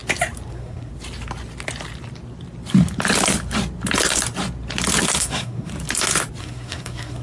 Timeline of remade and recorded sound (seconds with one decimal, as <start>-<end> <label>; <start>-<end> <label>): 0.0-0.5 recorded; 0.5-0.9 remade; 0.9-5.2 recorded; 5.2-5.7 remade; 5.7-6.4 recorded; 6.4-7.2 remade